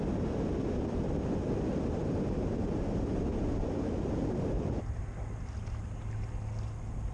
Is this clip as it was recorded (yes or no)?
yes